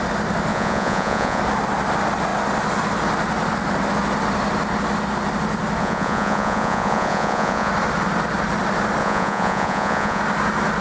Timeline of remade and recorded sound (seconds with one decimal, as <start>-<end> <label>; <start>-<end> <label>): 0.0-0.5 recorded; 0.5-1.4 remade; 1.4-5.8 recorded; 5.8-7.7 remade; 7.7-9.0 recorded; 9.0-10.2 remade; 10.2-10.8 recorded